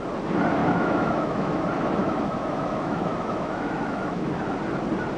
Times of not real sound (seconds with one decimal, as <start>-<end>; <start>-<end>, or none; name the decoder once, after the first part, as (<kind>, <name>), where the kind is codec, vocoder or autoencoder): 0.6-1.6 (autoencoder, DAC-VAE); 2.0-4.4